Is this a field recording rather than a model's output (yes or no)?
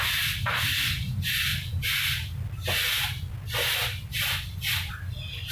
yes